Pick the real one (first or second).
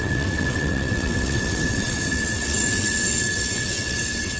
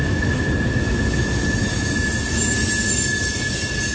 second